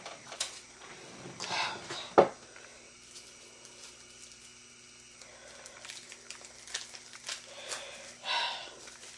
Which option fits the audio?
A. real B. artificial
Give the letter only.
A